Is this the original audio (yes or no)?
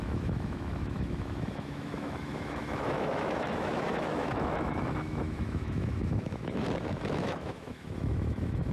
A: no